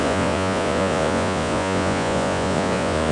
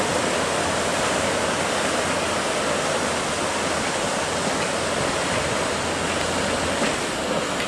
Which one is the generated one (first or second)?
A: first